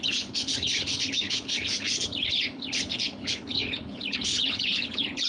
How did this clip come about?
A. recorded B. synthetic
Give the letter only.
B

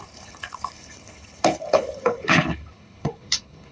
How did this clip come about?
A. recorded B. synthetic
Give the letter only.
B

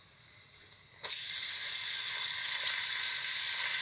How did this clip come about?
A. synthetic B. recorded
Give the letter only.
B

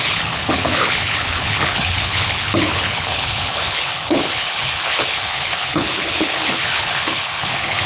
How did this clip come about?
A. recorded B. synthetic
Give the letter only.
B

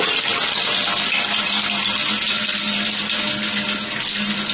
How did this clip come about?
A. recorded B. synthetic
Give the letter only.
A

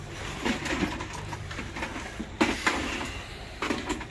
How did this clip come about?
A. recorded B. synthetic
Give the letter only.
A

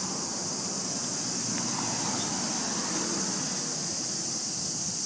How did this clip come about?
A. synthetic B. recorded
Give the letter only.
B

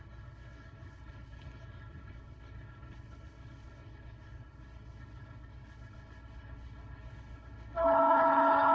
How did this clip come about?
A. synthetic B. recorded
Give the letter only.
A